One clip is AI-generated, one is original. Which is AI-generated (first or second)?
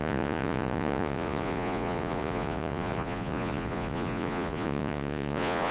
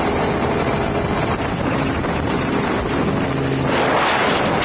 first